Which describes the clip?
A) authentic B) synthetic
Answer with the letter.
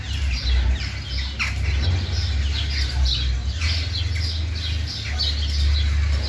A